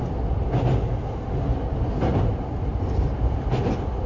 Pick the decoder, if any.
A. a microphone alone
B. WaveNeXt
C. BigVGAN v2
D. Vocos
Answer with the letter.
A